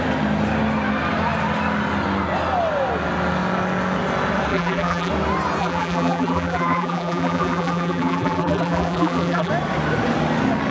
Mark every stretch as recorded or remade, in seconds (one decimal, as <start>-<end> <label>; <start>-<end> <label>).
0.0-4.5 recorded; 4.5-5.1 remade; 5.1-5.6 recorded; 5.6-9.5 remade; 9.5-10.7 recorded